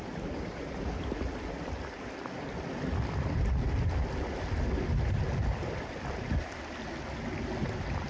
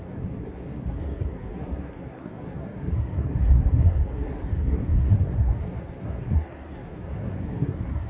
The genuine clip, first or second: first